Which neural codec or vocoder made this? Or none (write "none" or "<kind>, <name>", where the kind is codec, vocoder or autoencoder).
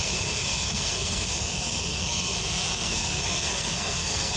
codec, SNAC